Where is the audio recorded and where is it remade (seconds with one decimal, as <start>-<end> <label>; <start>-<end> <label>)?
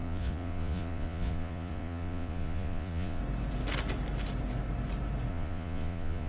0.0-3.2 remade; 3.2-5.3 recorded; 5.3-6.3 remade